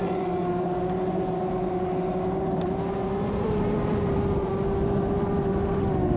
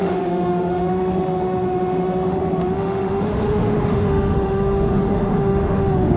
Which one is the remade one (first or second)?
second